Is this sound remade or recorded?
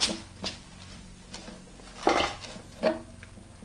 recorded